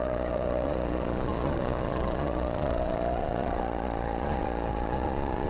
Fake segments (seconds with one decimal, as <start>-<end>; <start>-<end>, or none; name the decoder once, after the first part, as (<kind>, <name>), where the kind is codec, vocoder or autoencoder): 0.0-5.5 (vocoder, Vocos)